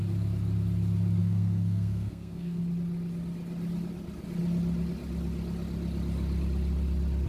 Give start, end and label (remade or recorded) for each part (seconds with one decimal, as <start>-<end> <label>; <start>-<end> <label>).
0.0-1.2 recorded; 1.2-2.6 remade; 2.6-7.3 recorded